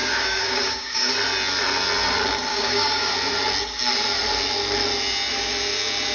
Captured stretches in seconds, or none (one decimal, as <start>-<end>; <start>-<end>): 1.1-2.5; 3.1-6.1